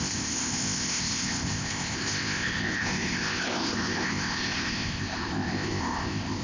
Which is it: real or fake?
fake